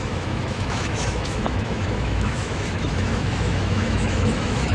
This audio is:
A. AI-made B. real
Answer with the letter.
A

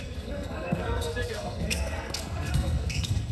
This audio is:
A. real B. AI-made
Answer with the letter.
B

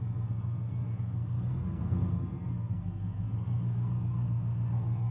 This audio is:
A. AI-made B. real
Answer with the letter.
A